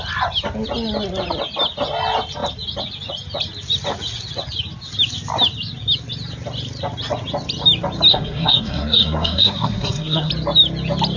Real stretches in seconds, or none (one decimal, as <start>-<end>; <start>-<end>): 0.0-8.1; 10.3-11.2